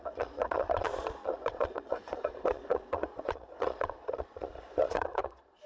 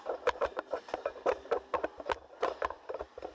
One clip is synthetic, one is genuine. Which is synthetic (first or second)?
first